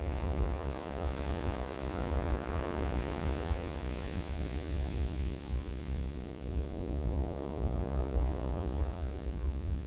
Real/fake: fake